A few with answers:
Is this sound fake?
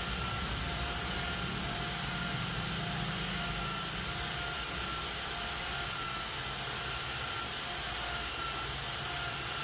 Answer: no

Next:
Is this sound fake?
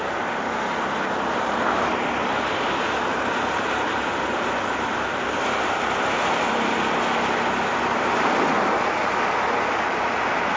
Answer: no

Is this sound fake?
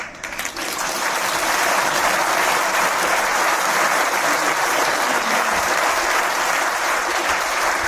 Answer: yes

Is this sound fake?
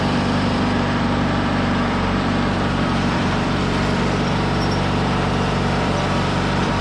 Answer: yes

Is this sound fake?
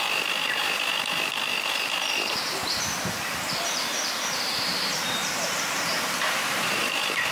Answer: yes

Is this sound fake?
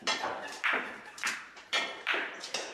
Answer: yes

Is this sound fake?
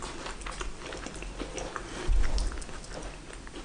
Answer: no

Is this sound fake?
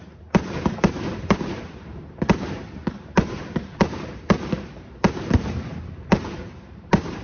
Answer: yes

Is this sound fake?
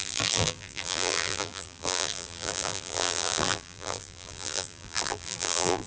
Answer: yes